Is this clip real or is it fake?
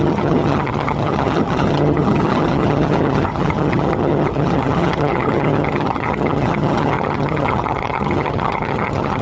fake